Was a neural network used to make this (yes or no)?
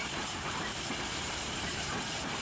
yes